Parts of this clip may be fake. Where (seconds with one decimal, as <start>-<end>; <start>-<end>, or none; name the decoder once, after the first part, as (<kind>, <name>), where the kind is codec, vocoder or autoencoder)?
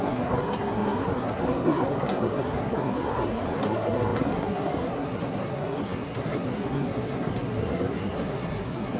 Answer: 0.0-9.0 (codec, SNAC)